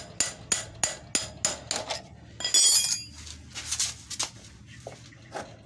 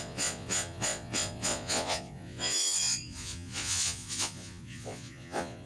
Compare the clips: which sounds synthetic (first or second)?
second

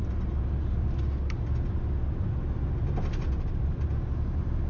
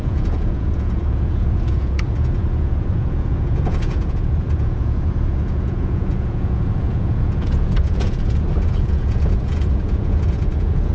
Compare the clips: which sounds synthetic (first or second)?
second